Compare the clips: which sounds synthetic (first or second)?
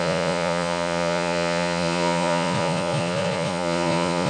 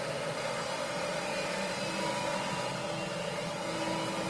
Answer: first